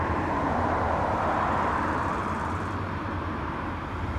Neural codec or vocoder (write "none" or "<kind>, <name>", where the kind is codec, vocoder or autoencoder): vocoder, BigVGAN v2